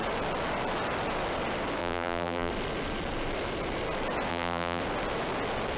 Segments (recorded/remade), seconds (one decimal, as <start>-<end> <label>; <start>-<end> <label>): 0.0-1.8 recorded; 1.8-2.5 remade; 2.5-4.3 recorded; 4.3-4.8 remade; 4.8-5.8 recorded

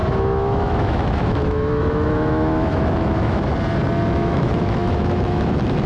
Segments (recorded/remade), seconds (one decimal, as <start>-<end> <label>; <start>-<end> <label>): 0.0-3.5 remade; 3.5-4.2 recorded; 4.2-5.9 remade

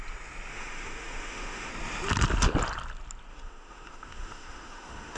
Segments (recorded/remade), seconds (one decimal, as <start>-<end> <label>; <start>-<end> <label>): 0.0-0.5 recorded; 0.5-1.7 remade; 1.7-3.3 recorded; 3.3-5.2 remade